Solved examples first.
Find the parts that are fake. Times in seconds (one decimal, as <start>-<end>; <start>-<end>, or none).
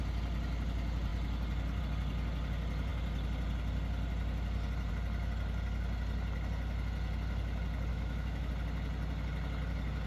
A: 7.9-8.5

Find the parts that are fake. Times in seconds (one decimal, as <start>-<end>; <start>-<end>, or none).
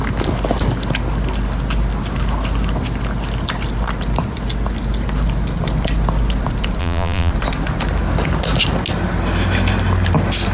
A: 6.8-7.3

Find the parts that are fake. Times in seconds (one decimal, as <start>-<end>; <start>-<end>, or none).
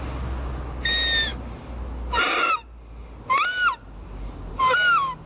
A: none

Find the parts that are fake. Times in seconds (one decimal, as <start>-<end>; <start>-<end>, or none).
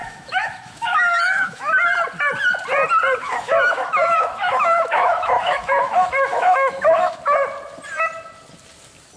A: 0.0-1.7; 3.2-7.2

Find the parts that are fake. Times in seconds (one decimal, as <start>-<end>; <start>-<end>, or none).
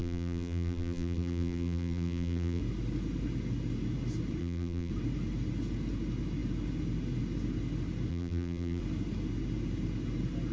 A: 0.0-2.6; 4.4-4.9; 8.1-8.8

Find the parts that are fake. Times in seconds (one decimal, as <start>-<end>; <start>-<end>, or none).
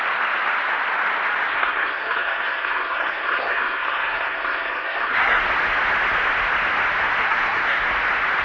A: 1.5-5.4; 7.2-7.8